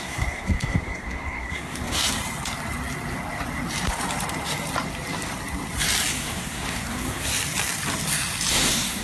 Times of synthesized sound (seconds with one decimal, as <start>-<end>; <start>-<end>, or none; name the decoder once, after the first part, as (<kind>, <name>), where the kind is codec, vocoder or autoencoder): 0.0-2.0 (codec, SNAC); 6.1-7.3; 8.5-9.0

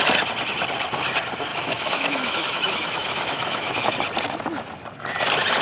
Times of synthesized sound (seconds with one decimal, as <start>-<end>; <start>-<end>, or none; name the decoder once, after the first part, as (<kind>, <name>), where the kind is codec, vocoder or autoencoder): 1.5-3.9 (autoencoder, DAC-VAE)

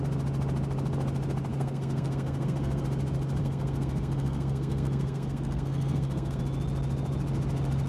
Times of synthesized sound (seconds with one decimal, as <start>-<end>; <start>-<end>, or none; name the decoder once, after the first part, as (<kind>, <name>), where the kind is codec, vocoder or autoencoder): 1.5-2.8 (codec, SNAC); 3.4-6.4

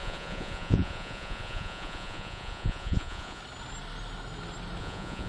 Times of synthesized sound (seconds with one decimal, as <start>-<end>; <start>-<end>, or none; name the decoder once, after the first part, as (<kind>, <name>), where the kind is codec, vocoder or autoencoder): 0.0-3.4 (vocoder, Vocos); 4.8-5.3

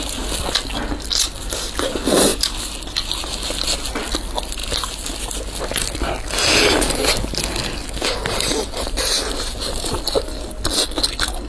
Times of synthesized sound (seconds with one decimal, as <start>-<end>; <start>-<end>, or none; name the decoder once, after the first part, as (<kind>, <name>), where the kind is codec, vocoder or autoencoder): none

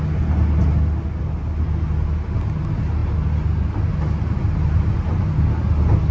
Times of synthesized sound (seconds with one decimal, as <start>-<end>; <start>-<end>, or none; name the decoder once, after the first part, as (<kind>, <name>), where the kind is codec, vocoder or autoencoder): none

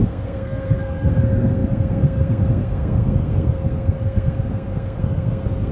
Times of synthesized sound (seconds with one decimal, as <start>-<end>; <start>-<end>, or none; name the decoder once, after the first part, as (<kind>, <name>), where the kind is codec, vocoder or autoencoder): 0.0-5.7 (codec, SNAC)

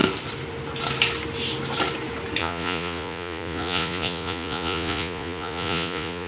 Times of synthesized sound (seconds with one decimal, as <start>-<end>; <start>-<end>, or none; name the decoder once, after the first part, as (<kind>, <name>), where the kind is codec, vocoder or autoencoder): 2.4-6.3 (vocoder, Vocos)